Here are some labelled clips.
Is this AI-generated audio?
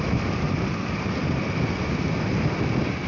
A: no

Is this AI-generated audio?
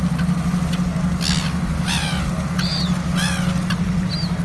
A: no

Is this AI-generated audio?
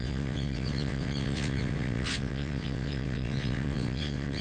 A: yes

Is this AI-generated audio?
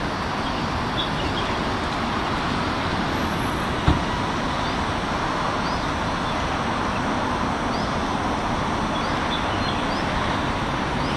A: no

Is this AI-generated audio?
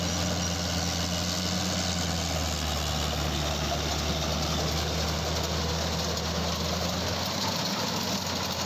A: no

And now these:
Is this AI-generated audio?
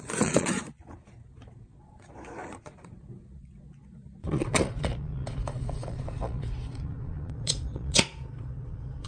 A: yes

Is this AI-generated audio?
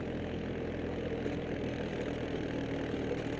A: no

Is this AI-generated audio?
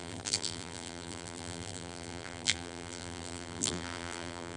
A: yes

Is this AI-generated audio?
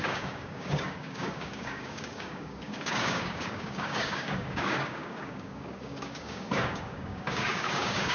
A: yes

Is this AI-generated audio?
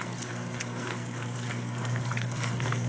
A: yes